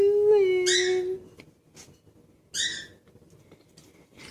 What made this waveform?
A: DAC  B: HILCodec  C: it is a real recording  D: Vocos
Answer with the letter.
C